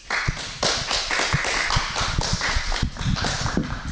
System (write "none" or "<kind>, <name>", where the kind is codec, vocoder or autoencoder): none